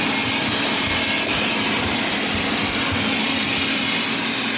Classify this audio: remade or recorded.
recorded